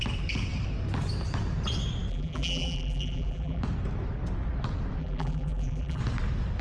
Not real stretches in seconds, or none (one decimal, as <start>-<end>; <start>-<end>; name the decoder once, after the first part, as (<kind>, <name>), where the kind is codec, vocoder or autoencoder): 2.1-3.6 (vocoder, BigVGAN v2); 5.0-6.0